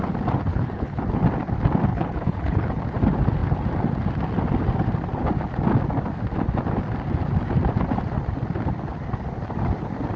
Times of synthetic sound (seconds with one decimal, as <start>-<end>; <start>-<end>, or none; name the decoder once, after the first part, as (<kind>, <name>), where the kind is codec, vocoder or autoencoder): 0.5-1.2 (codec, HILCodec); 1.9-2.8